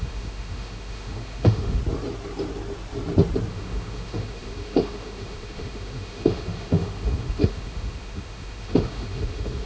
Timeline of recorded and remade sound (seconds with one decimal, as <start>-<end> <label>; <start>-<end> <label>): 0.0-1.8 remade; 1.8-3.5 recorded; 3.5-9.7 remade